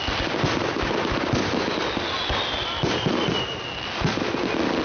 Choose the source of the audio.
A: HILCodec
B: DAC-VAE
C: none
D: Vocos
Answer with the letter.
C